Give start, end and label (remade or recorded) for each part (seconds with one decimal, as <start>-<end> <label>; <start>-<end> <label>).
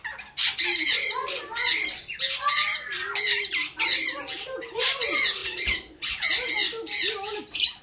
0.0-7.8 recorded